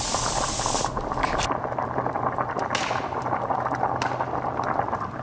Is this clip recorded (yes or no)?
yes